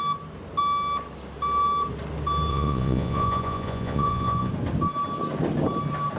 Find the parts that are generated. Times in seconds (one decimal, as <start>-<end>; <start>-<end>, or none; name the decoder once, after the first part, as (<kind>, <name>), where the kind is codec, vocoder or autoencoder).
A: 2.5-4.5 (vocoder, Vocos)